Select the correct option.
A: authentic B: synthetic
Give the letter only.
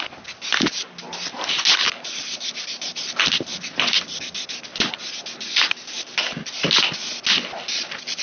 A